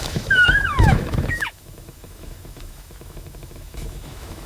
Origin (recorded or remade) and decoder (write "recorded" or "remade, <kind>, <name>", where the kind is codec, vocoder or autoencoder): remade, autoencoder, DAC-VAE